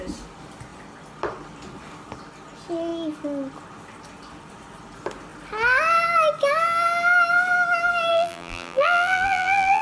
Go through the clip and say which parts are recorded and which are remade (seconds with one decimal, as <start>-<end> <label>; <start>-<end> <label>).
0.0-8.1 recorded; 8.1-9.8 remade

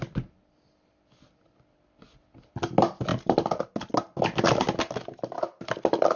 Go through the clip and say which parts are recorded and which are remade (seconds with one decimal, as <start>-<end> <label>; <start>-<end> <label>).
0.0-6.2 recorded